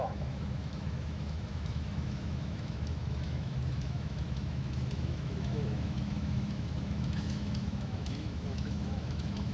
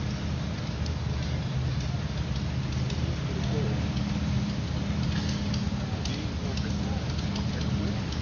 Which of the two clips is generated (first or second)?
first